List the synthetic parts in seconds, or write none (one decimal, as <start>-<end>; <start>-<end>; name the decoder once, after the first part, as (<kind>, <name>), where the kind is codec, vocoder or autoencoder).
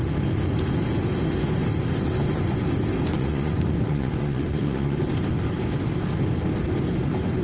3.1-5.0 (vocoder, Vocos)